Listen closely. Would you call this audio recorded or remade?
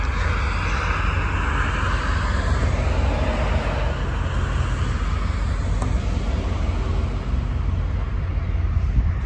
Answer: recorded